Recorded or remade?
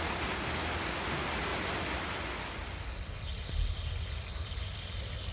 recorded